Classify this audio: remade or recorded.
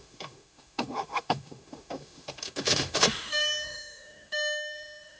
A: remade